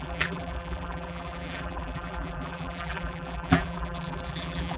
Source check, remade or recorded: remade